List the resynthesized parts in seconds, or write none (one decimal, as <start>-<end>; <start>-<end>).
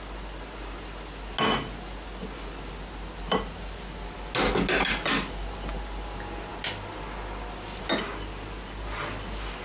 none